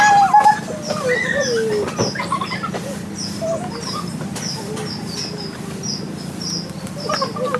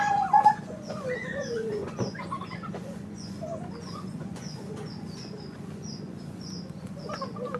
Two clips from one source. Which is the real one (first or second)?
first